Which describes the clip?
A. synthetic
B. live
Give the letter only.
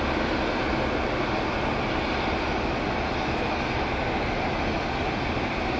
B